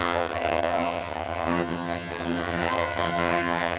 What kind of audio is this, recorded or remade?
remade